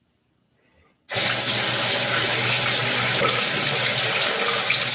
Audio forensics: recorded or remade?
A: recorded